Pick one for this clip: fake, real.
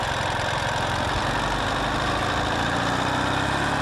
real